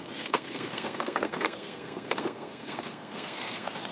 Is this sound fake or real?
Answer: fake